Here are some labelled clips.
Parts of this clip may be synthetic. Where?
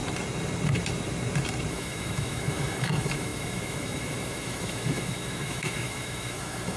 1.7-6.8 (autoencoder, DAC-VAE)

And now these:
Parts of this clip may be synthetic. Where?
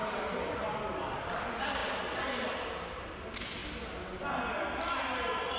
none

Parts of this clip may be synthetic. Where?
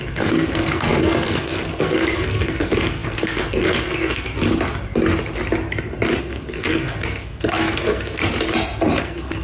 0.0-4.3 (codec, SNAC); 6.2-8.2; 9.0-9.4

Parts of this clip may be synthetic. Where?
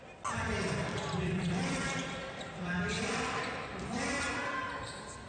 0.9-4.1 (vocoder, BigVGAN v2)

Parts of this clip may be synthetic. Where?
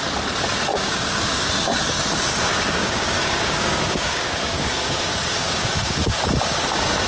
0.7-1.5 (codec, DAC); 2.3-6.1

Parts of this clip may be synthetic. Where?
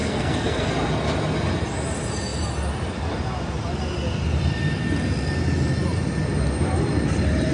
0.0-0.7 (codec, SNAC)